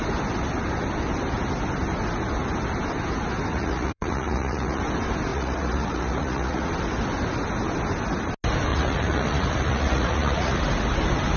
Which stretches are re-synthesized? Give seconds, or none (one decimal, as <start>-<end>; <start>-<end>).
3.5-4.8; 5.3-6.7; 8.7-10.6